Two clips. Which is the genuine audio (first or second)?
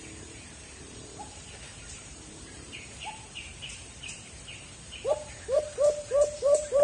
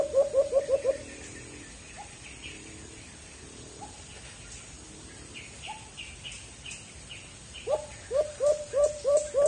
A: second